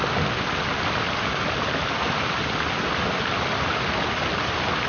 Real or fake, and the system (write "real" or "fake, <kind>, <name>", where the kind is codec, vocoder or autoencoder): real